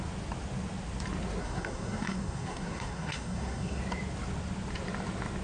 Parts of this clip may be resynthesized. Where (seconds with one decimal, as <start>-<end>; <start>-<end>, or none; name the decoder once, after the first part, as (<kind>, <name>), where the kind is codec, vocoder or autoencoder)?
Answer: 1.4-3.8 (codec, SNAC)